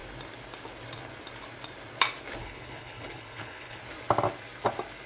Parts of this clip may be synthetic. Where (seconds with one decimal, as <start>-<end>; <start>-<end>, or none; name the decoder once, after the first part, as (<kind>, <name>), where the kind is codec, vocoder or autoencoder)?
2.4-3.8 (codec, HILCodec)